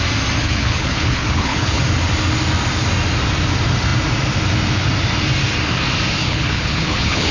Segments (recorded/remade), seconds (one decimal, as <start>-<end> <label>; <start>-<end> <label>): 0.0-0.4 recorded; 0.4-1.8 remade; 1.8-6.2 recorded; 6.2-7.3 remade